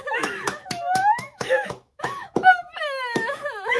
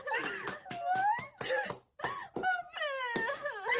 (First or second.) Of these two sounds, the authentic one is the second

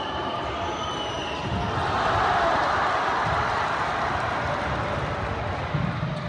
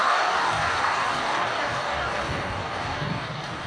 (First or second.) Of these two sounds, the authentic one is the first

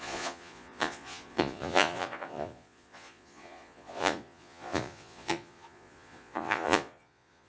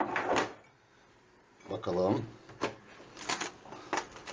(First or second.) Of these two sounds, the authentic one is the second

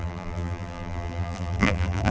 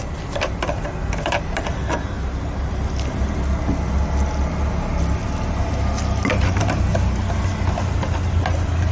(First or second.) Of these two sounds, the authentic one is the second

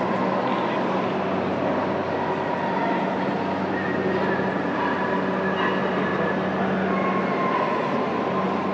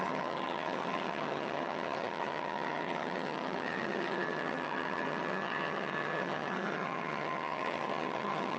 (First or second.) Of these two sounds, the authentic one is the first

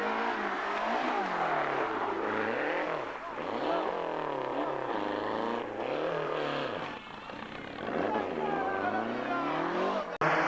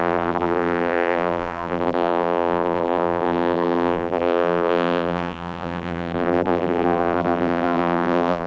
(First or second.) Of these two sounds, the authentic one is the first